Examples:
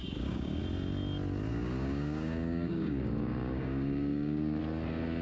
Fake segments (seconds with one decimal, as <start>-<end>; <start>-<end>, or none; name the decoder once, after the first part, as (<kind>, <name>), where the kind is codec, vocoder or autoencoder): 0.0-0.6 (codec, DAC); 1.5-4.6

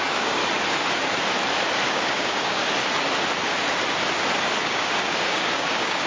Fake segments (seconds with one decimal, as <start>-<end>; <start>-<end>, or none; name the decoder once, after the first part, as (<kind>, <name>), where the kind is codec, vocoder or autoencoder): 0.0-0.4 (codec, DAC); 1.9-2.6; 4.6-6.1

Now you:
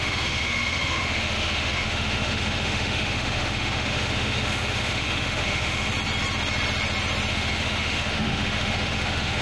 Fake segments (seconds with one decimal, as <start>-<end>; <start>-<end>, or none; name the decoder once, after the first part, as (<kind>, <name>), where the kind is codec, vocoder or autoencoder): 0.0-5.9 (autoencoder, DAC-VAE); 7.3-9.4